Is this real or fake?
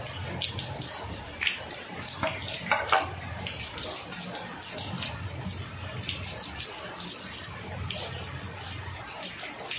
real